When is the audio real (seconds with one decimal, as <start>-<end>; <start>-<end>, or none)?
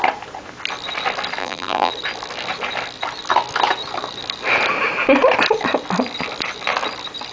0.0-1.4; 1.9-7.3